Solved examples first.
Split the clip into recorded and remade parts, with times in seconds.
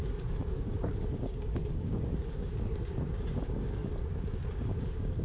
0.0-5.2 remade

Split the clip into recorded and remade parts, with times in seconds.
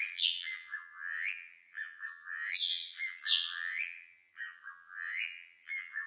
0.0-6.1 remade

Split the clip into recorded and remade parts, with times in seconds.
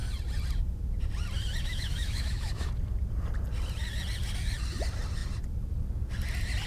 0.0-1.6 recorded; 1.6-2.7 remade; 2.7-6.7 recorded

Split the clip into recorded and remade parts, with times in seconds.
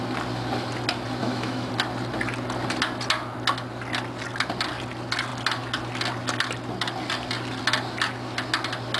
0.0-1.2 recorded; 1.2-1.7 remade; 1.7-9.0 recorded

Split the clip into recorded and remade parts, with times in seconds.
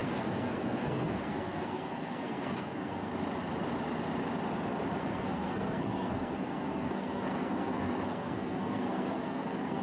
0.0-3.1 remade; 3.1-5.0 recorded; 5.0-9.8 remade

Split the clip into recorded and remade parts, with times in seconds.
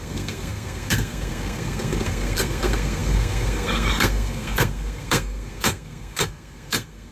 0.0-7.1 remade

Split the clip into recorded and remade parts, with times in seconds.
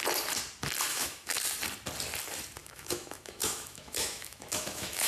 0.0-0.9 recorded; 0.9-1.4 remade; 1.4-2.6 recorded; 2.6-5.1 remade